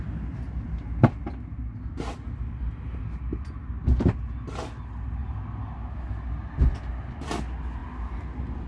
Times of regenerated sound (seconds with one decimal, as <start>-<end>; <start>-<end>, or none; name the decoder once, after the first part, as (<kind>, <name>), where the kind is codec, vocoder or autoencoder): none